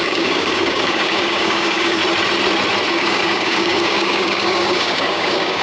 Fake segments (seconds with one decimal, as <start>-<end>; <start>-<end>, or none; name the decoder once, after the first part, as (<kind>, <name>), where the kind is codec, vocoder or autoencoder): 0.0-2.0 (codec, DAC); 2.9-5.6